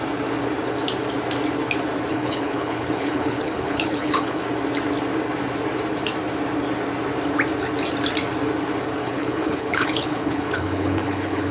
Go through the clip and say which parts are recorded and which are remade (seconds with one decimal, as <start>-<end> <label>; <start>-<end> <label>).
0.0-2.1 recorded; 2.1-4.4 remade; 4.4-9.0 recorded; 9.0-11.5 remade